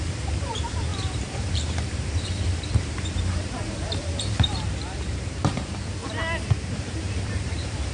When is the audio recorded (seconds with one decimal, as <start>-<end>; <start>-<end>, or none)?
6.0-6.7